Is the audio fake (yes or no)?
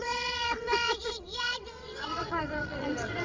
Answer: yes